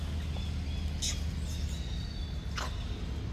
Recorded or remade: recorded